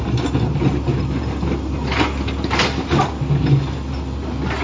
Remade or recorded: recorded